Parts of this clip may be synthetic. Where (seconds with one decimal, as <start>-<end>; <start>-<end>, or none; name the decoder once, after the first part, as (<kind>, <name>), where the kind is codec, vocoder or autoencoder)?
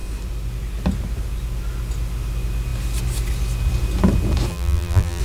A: 4.5-5.2 (vocoder, BigVGAN v2)